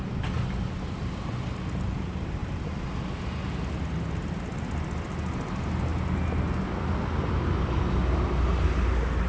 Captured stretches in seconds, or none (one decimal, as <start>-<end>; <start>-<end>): 0.0-9.3